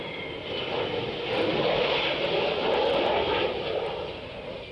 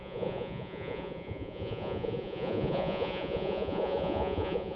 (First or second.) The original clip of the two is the first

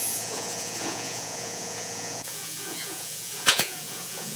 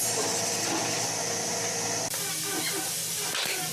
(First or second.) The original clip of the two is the second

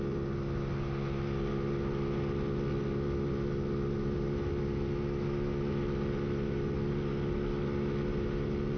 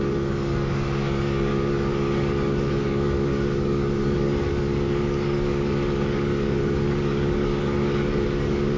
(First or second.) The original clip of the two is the first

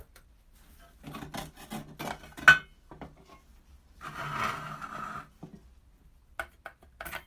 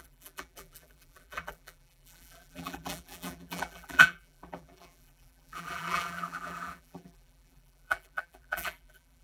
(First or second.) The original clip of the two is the first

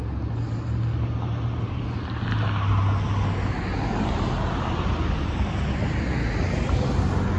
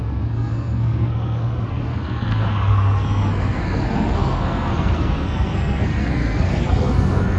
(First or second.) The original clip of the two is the first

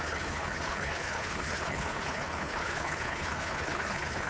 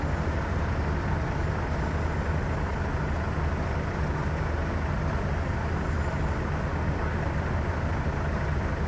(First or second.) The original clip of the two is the second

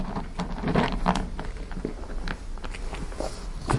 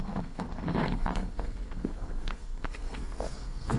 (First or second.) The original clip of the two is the first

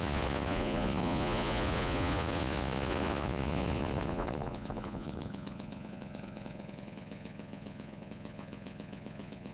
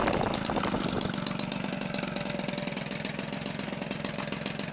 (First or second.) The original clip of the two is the second